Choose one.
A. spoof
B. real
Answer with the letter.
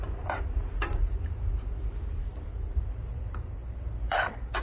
A